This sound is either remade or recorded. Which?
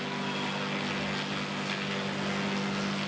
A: recorded